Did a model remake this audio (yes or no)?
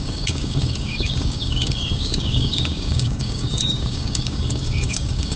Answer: yes